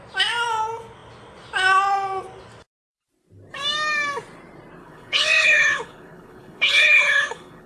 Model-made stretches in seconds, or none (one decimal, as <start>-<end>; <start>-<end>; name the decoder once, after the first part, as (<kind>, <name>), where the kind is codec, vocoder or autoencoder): 4.8-7.7 (codec, HILCodec)

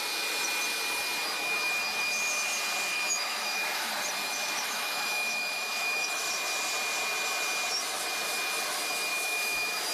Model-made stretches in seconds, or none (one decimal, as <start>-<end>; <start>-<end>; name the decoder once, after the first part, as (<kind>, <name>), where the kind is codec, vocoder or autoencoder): 2.9-3.9 (autoencoder, DAC-VAE); 4.4-6.3; 9.1-9.9

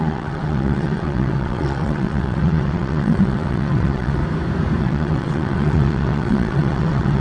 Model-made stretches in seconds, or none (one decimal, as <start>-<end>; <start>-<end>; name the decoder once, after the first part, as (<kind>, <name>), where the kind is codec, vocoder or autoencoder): 0.0-4.2 (vocoder, WaveNeXt); 4.8-7.2

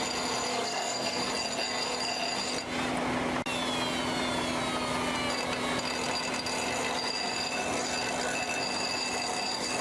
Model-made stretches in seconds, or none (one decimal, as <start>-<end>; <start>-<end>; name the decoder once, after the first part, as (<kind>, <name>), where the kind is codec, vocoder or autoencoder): 0.5-1.2 (codec, SNAC)